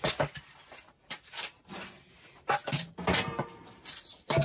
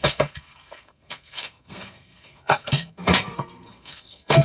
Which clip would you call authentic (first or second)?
first